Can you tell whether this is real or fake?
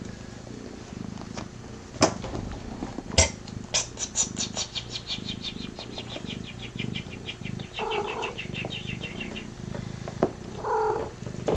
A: real